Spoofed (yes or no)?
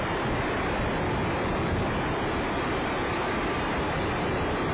no